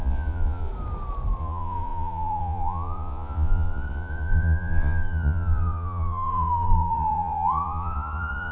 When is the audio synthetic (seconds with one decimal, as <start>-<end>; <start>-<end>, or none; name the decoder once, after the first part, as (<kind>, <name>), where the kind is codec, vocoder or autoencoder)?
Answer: 0.0-0.7 (vocoder, Vocos); 1.4-8.5